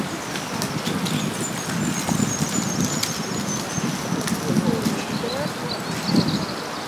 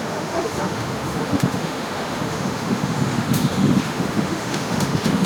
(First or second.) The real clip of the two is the first